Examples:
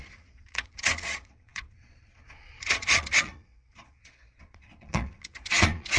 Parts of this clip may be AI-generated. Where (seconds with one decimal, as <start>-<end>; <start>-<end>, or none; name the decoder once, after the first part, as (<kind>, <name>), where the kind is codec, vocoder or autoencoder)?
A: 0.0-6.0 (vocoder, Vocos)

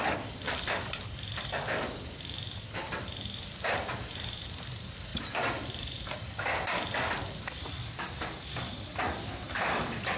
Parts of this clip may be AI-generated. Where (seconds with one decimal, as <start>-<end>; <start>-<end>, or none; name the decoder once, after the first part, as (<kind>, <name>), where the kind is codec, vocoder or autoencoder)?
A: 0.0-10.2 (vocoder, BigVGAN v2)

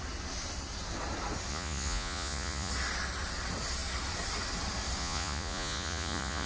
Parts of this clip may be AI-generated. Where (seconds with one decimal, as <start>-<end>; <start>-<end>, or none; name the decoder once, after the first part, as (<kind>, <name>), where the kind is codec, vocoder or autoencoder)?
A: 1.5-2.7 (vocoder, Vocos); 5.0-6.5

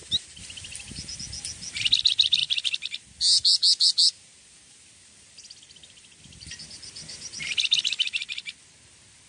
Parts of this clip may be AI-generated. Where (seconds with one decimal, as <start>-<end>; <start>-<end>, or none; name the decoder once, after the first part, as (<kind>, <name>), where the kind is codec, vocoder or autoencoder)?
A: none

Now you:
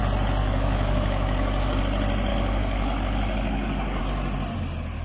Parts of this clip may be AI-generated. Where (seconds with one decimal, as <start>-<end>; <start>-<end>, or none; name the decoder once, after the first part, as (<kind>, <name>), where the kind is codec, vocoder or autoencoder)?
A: 0.4-1.8 (codec, DAC); 2.3-4.0

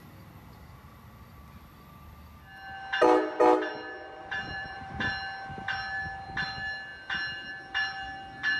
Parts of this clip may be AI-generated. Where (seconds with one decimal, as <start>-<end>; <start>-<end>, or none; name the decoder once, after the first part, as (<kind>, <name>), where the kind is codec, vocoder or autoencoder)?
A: 4.2-5.1 (vocoder, BigVGAN v2)

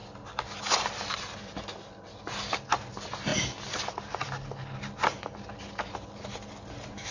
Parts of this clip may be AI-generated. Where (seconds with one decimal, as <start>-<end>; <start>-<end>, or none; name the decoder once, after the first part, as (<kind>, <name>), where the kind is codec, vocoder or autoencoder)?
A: none

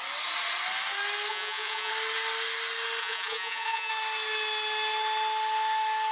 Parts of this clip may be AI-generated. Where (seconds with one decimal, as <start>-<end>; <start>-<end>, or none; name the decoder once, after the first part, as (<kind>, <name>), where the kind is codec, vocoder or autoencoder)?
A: 1.3-1.9 (vocoder, Vocos); 3.0-3.9